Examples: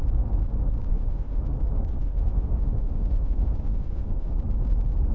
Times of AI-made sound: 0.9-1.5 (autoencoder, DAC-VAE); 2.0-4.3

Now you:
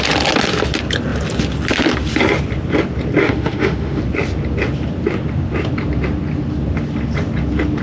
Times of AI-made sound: 3.2-4.0 (autoencoder, DAC-VAE)

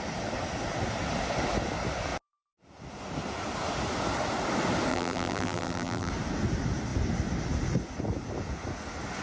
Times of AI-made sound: 4.9-6.1 (vocoder, BigVGAN v2)